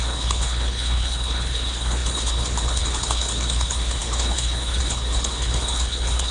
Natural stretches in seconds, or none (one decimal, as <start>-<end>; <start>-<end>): none